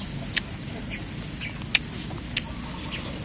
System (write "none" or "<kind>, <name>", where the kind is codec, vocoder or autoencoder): none